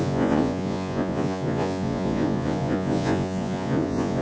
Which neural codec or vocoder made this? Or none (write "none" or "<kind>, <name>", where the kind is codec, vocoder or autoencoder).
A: vocoder, Vocos